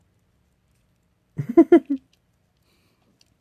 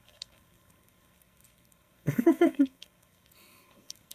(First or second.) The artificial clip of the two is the second